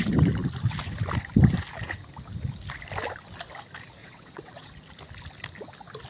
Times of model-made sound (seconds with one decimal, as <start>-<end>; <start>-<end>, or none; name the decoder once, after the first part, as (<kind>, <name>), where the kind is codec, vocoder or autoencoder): 4.0-4.7 (vocoder, WaveNeXt)